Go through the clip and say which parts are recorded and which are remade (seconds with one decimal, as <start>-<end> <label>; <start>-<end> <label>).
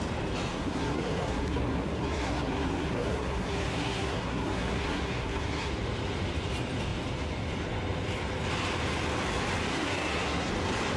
0.0-0.5 recorded; 0.5-5.7 remade; 5.7-9.7 recorded; 9.7-10.5 remade; 10.5-11.0 recorded